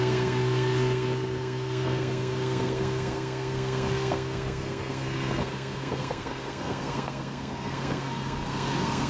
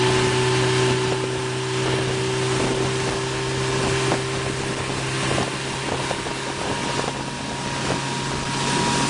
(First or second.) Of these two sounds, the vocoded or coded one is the first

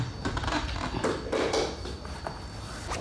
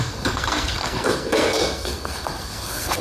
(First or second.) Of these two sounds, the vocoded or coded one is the second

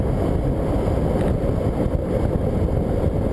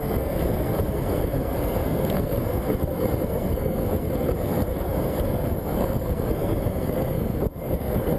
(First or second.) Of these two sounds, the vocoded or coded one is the second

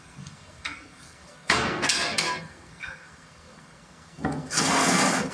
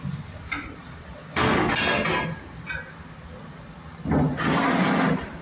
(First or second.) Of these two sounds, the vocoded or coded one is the first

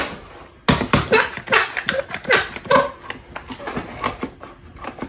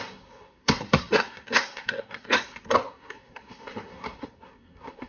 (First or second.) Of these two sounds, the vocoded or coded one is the second